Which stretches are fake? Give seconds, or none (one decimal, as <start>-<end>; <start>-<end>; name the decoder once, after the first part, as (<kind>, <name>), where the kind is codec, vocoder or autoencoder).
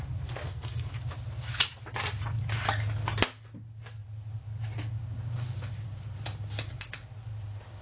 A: 0.4-0.9 (codec, SNAC)